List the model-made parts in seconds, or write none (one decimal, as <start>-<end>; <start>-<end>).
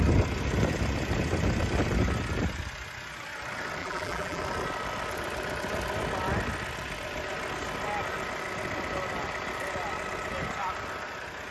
3.8-4.4